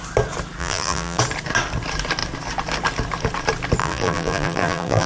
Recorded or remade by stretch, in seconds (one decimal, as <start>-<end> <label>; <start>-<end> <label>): 0.0-0.6 recorded; 0.6-1.2 remade; 1.2-3.8 recorded; 3.8-5.1 remade